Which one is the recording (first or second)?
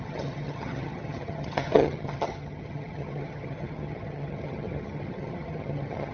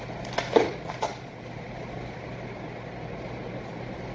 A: second